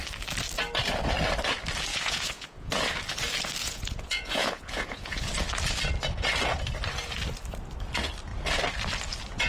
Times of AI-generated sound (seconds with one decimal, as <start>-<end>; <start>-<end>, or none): 1.9-2.7; 3.6-5.3